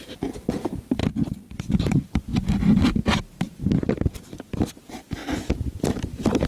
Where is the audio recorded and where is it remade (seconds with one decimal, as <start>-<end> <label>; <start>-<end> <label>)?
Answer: 0.0-1.0 remade; 1.0-1.6 recorded; 1.6-2.3 remade; 2.3-4.1 recorded; 4.1-5.2 remade; 5.2-5.9 recorded; 5.9-6.5 remade